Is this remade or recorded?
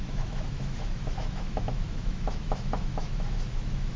remade